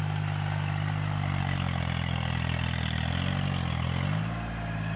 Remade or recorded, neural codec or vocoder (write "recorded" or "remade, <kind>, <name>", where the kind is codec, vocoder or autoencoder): recorded